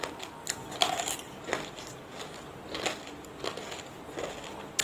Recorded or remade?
recorded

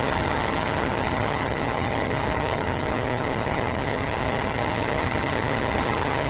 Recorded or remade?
remade